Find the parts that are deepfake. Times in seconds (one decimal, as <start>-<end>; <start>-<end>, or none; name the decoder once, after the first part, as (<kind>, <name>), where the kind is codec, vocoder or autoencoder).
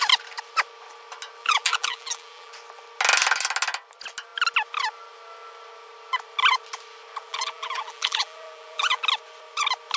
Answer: 1.4-2.5 (vocoder, BigVGAN v2); 7.3-9.0